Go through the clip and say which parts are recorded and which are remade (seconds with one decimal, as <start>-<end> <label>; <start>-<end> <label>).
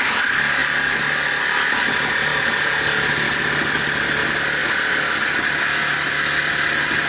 0.0-7.1 recorded